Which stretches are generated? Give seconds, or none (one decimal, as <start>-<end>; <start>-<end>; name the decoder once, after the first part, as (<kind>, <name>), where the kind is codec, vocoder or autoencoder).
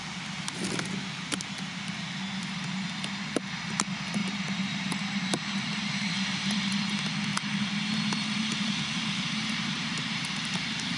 4.2-6.8 (vocoder, BigVGAN v2); 7.3-11.0